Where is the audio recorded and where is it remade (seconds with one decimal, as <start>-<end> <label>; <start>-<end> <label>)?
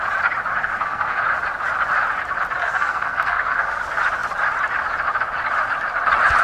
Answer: 0.0-0.6 recorded; 0.6-1.2 remade; 1.2-2.6 recorded; 2.6-3.8 remade; 3.8-6.4 recorded